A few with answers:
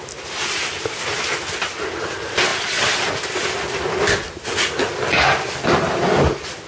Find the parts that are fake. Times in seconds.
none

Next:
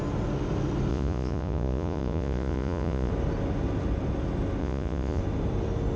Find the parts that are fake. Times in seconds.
0.9-3.1; 4.6-5.2

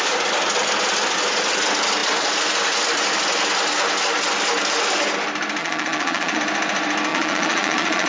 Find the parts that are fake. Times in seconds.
5.6-6.4; 7.1-8.1

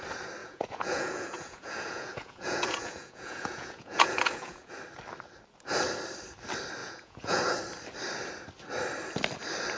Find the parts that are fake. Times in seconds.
0.4-4.7; 6.8-7.6

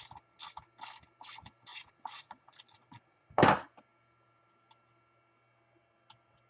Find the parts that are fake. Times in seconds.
1.7-3.3